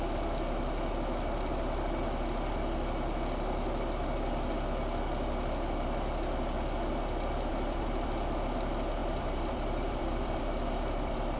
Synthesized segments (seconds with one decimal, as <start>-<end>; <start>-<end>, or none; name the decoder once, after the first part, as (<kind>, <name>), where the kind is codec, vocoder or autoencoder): 7.5-8.1 (vocoder, BigVGAN v2); 9.0-11.4